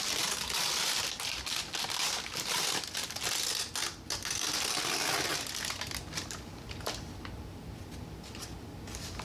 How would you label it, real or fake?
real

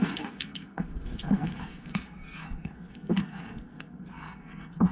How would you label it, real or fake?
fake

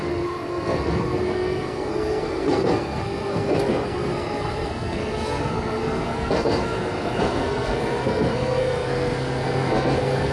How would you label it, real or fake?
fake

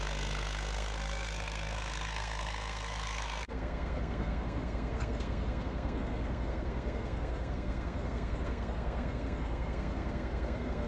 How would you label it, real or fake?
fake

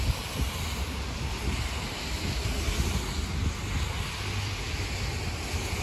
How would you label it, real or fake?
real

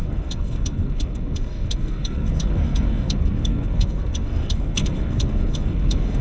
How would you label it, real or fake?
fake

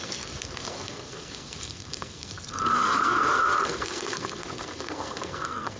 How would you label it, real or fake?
fake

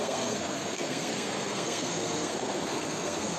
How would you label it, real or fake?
fake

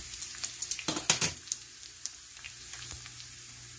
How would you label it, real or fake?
real